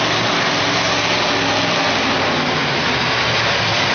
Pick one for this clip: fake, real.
real